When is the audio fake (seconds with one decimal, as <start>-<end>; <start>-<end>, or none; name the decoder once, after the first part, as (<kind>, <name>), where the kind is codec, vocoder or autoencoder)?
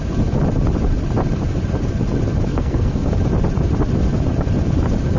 2.5-3.1 (codec, SNAC)